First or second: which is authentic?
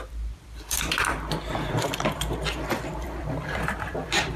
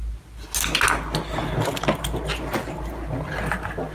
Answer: second